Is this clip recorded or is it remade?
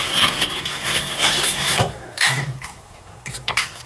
remade